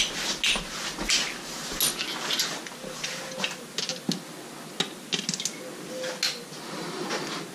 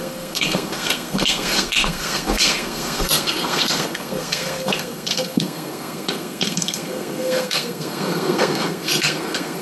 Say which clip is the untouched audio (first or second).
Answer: first